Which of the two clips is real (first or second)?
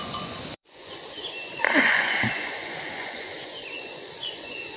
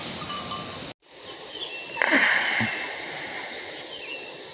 second